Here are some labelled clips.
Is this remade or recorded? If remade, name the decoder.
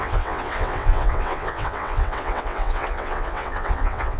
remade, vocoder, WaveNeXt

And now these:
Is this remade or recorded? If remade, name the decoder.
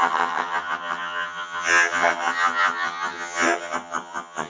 remade, vocoder, HiFi-GAN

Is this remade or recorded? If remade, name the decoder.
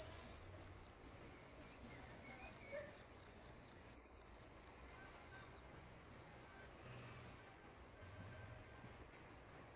remade, vocoder, Vocos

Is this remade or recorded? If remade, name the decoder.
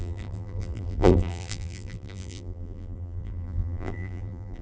remade, vocoder, BigVGAN v2